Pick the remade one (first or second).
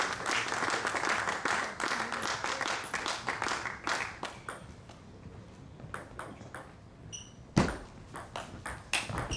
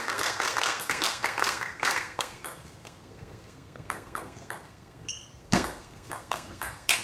second